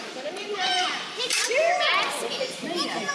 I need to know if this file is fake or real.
fake